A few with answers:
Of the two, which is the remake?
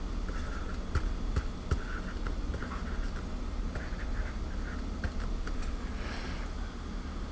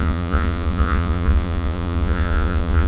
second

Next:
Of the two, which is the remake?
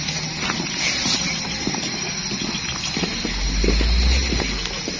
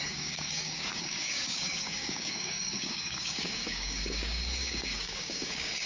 second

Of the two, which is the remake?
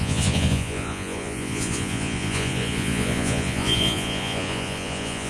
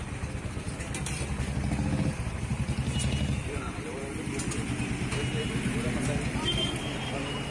first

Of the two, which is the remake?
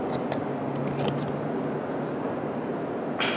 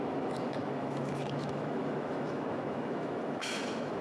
second